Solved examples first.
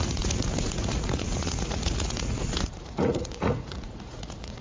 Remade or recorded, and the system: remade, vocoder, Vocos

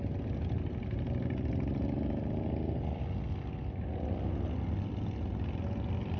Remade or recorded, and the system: recorded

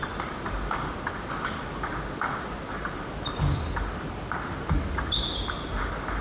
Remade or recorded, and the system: recorded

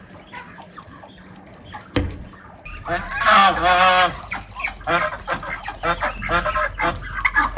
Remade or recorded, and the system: recorded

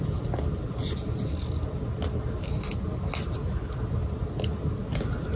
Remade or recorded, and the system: recorded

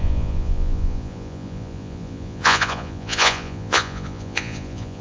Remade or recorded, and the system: remade, vocoder, Vocos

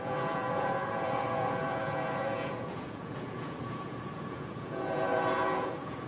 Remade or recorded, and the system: remade, vocoder, Vocos